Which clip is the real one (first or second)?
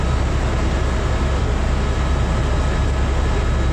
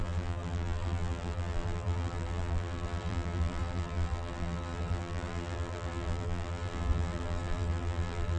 first